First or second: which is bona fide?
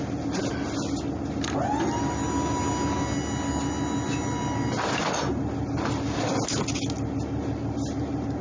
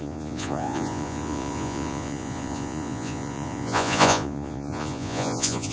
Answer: first